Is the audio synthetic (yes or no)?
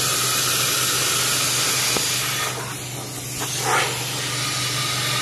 no